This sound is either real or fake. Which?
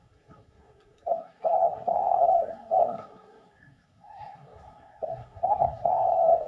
fake